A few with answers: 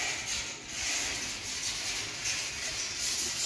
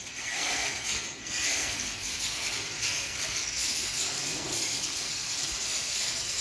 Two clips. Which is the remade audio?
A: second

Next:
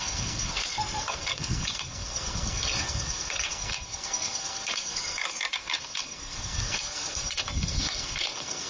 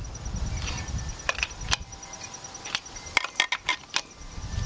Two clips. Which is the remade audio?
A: first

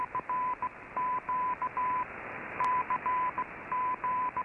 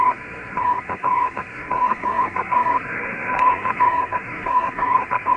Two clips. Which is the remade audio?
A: second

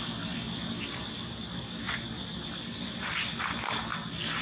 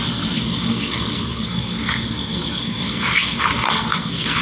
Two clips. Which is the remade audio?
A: second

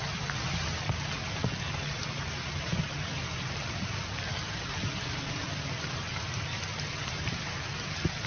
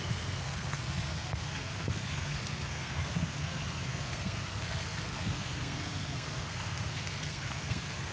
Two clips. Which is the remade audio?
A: second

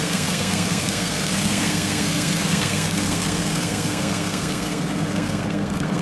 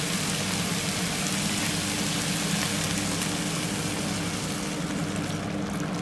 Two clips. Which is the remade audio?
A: first